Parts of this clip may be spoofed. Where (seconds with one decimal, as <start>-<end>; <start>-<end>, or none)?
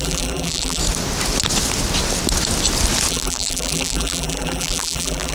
0.0-0.8; 3.1-5.3